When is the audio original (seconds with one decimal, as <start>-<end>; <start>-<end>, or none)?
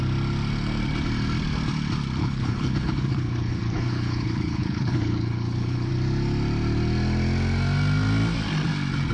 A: 0.0-2.2; 5.9-9.1